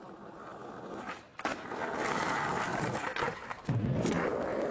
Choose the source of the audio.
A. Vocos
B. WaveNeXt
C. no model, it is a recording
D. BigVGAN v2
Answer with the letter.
C